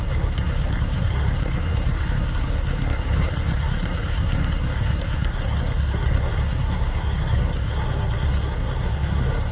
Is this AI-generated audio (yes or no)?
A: yes